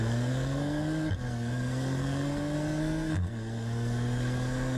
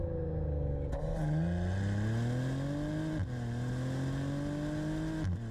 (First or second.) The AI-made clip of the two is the first